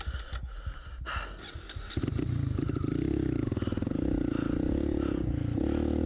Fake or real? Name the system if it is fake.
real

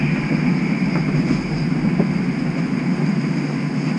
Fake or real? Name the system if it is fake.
real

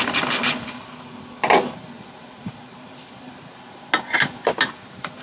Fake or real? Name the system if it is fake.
real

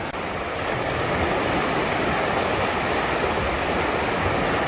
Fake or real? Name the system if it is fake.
real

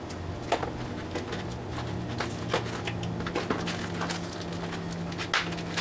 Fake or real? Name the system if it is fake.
real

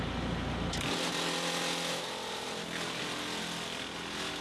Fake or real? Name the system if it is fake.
real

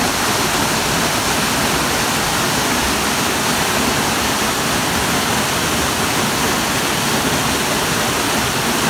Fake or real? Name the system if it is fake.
real